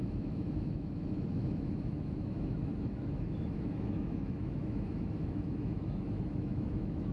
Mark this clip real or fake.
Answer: fake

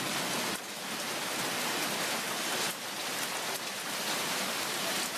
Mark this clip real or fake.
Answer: real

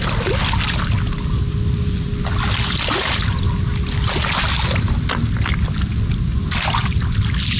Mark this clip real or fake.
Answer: real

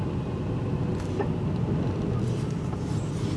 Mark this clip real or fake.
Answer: real